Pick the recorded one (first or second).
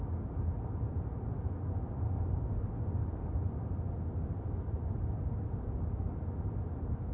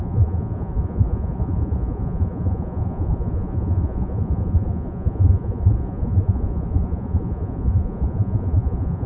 first